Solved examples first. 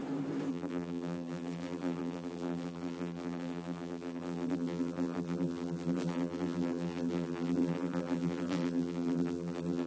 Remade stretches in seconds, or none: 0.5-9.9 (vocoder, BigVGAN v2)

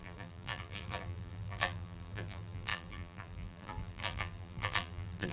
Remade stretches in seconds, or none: 0.0-5.3 (vocoder, BigVGAN v2)

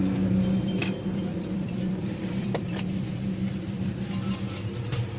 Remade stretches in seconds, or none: 0.8-3.9 (vocoder, BigVGAN v2)

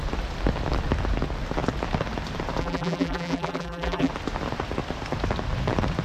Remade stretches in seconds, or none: 2.6-4.1 (vocoder, BigVGAN v2)

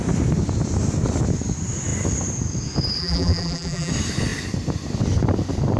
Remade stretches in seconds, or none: 3.0-3.9 (vocoder, BigVGAN v2)